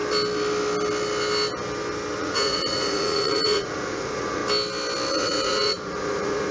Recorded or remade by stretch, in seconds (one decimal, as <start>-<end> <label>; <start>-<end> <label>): 0.0-2.2 recorded; 2.2-4.4 remade; 4.4-5.1 recorded; 5.1-6.5 remade